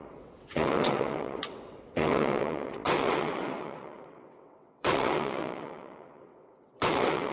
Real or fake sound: fake